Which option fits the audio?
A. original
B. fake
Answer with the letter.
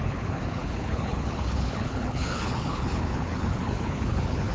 B